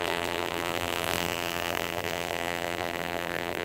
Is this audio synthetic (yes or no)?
yes